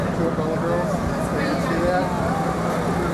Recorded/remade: recorded